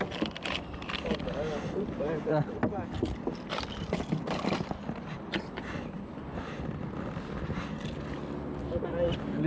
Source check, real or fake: real